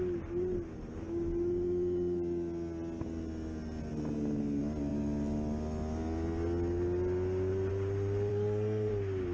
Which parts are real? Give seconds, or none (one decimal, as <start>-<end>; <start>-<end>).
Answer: 0.0-8.3; 8.9-9.3